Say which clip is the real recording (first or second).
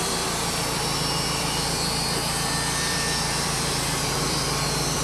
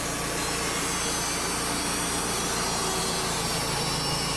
second